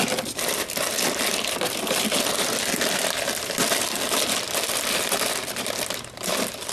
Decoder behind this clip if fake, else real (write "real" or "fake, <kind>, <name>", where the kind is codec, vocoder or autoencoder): fake, vocoder, BigVGAN v2